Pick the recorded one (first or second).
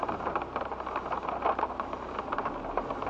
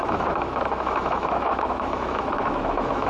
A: first